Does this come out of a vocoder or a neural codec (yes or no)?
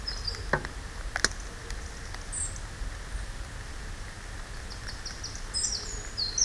no